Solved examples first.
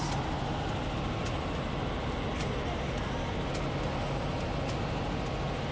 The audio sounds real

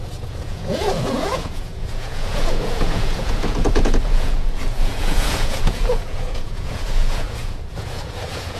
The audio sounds fake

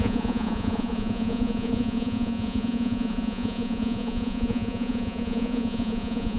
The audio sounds fake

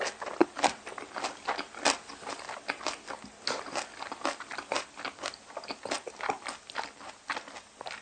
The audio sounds real